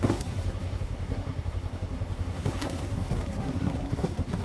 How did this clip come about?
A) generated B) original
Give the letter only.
A